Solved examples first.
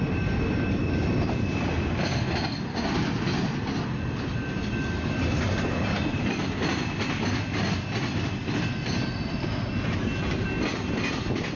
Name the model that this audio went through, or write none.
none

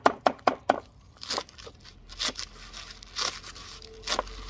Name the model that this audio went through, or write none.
none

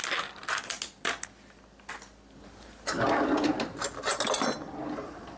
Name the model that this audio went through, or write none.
none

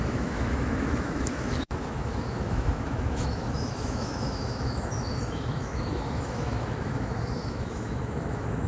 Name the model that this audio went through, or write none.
autoencoder, DAC-VAE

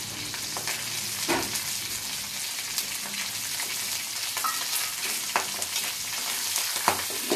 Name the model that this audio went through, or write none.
none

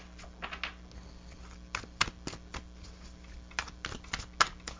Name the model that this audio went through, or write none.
none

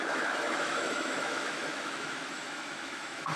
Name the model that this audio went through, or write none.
autoencoder, DAC-VAE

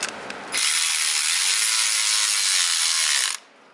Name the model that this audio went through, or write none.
none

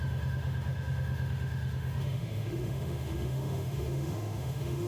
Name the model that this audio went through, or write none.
autoencoder, DAC-VAE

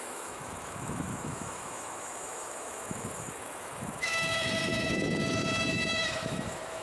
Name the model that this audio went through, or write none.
autoencoder, DAC-VAE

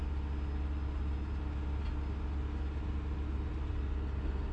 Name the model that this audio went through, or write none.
none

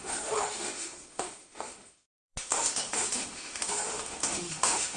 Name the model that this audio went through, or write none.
autoencoder, DAC-VAE